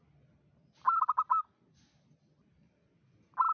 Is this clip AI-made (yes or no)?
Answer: no